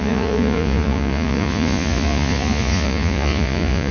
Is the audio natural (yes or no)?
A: no